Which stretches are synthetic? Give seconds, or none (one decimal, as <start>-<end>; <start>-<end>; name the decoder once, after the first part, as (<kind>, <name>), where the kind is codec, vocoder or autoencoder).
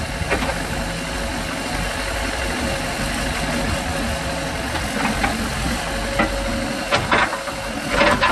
none